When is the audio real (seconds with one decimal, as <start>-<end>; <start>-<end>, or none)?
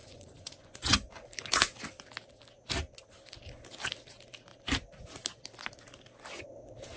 1.1-7.0